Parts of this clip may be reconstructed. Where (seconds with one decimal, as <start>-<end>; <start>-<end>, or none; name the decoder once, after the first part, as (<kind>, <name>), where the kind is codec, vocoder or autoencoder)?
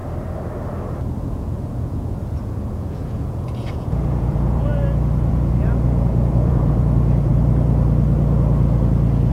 1.3-4.7 (vocoder, Vocos); 5.3-7.3